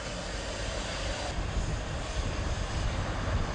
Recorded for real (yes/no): yes